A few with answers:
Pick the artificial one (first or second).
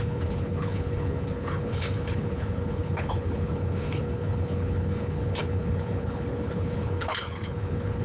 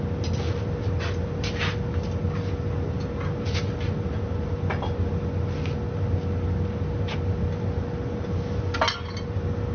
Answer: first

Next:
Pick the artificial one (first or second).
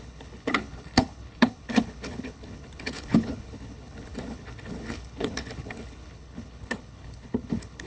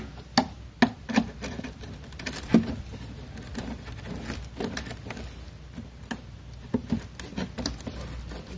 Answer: first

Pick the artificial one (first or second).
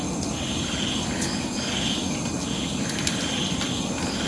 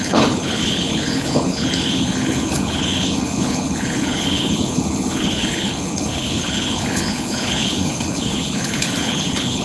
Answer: second